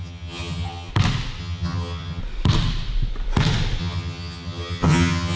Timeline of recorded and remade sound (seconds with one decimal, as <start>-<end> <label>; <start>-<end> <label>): 0.0-0.9 remade; 0.9-1.4 recorded; 1.4-2.2 remade; 2.2-3.8 recorded; 3.8-5.4 remade